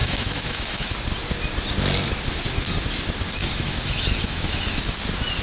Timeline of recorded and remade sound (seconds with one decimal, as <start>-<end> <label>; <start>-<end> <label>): 0.0-0.9 remade; 0.9-3.4 recorded; 3.4-4.8 remade; 4.8-5.4 recorded